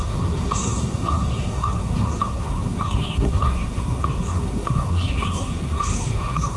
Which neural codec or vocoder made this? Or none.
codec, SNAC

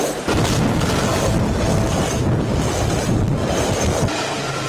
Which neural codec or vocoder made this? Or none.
none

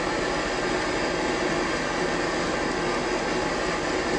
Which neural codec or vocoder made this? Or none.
none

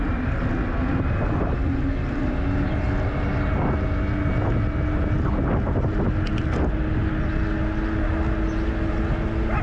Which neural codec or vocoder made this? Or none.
none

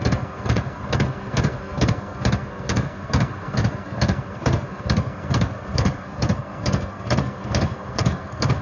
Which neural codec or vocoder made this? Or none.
codec, SNAC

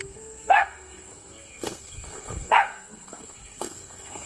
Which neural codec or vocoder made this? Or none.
codec, SNAC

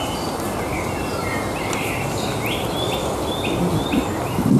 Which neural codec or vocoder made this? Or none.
none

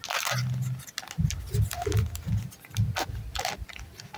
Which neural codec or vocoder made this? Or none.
none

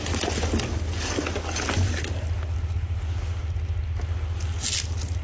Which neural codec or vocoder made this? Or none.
none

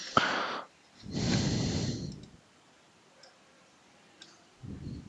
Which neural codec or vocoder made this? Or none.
none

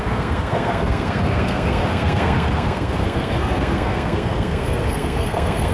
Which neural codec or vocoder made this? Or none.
codec, SNAC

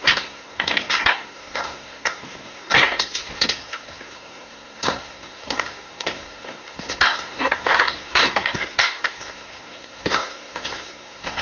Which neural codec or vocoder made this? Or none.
codec, SNAC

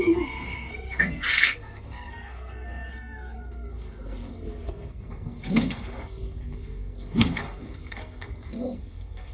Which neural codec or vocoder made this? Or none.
codec, SNAC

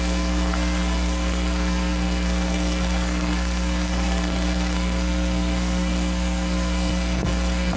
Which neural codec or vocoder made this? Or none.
codec, SNAC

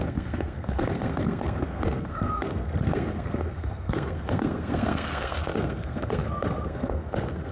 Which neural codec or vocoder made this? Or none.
codec, SNAC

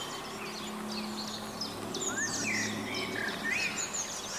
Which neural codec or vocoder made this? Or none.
none